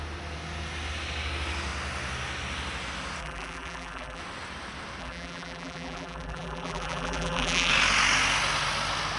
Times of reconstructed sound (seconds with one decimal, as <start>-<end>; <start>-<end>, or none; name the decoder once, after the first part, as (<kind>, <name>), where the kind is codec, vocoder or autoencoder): 3.2-4.2 (vocoder, BigVGAN v2); 5.0-7.7